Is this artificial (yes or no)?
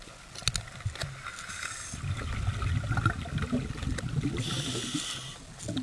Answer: no